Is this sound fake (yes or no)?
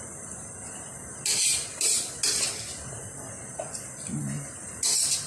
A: no